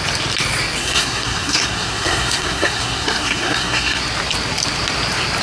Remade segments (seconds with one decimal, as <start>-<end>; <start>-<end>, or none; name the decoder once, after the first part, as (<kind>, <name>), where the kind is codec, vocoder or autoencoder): 0.8-4.0 (codec, SNAC)

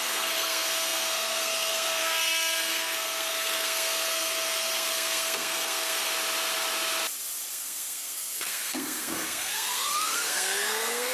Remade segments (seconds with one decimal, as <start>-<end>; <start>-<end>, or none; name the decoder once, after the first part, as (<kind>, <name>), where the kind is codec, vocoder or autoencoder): 0.0-6.1 (codec, SNAC); 7.5-11.1

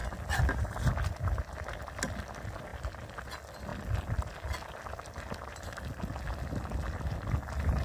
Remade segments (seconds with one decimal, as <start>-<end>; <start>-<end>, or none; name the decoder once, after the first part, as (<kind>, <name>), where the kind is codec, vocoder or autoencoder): none

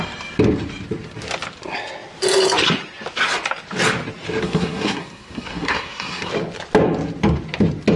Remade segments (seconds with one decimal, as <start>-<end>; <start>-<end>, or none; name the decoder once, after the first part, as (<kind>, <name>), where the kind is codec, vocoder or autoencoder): 4.4-6.3 (codec, SNAC)

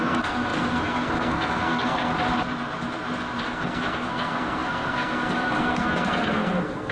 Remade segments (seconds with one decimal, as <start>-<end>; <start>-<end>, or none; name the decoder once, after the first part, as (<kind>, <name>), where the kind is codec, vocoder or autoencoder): 0.0-2.1 (codec, SNAC); 3.4-6.9

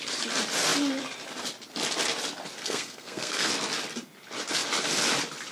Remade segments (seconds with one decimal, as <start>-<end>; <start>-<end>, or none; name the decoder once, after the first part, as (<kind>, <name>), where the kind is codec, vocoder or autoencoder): 2.6-3.5 (codec, SNAC)

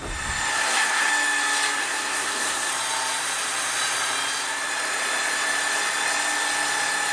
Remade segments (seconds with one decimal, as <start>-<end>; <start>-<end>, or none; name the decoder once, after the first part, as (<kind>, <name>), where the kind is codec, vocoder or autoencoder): 0.5-1.1 (codec, SNAC); 1.8-2.7

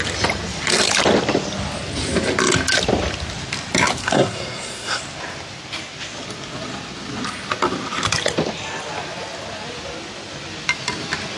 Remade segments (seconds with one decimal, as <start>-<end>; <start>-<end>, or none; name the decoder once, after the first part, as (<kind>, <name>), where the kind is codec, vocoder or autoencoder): 4.0-5.0 (codec, SNAC)